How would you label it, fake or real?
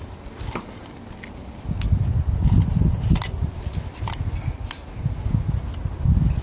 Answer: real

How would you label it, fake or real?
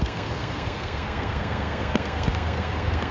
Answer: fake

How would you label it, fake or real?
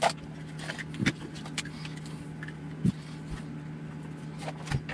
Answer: real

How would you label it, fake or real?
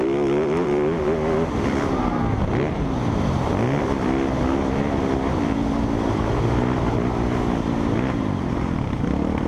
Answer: real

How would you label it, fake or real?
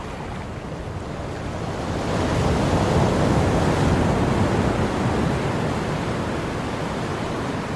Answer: real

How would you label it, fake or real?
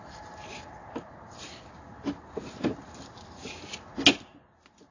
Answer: real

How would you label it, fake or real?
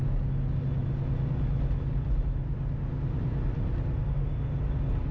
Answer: real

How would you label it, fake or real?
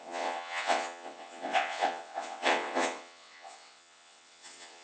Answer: fake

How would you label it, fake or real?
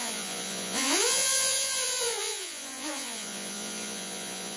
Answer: fake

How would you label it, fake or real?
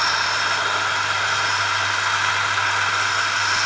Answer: real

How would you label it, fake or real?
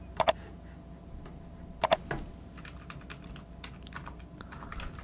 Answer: real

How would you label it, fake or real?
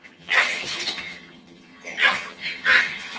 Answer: fake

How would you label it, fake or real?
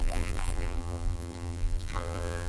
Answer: fake